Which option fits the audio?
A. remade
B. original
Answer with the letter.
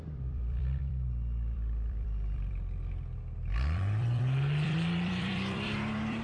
A